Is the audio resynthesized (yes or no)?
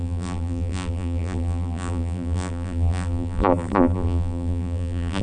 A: yes